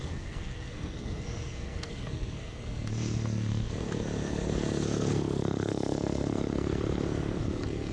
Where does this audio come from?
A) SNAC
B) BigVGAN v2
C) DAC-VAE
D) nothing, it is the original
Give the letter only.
A